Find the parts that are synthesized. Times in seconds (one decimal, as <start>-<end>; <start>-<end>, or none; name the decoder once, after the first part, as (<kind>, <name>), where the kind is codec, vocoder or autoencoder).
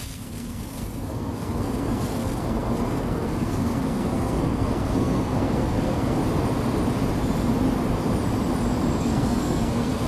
0.0-6.2 (codec, SNAC); 9.0-10.1